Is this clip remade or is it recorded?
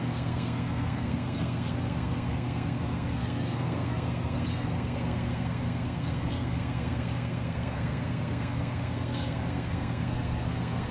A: remade